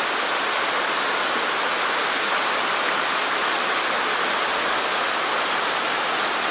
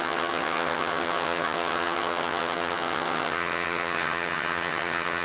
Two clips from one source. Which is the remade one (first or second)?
second